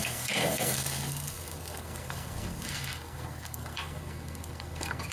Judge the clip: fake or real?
fake